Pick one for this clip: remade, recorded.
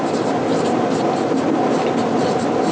recorded